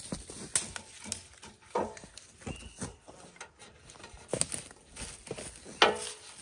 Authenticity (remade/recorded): recorded